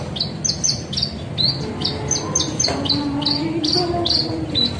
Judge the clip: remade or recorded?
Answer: recorded